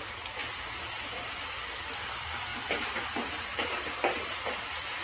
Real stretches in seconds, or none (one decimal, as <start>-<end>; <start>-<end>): 0.0-5.0